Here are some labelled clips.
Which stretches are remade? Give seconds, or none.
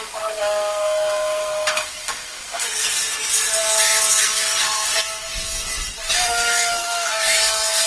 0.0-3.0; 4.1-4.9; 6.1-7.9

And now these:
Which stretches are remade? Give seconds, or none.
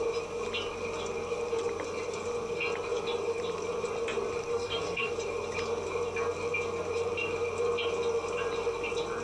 4.5-5.1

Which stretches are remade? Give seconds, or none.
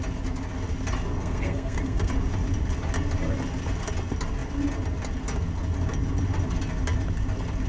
1.2-2.1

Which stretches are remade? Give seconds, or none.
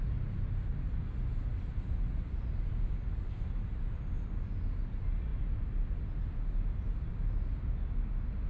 none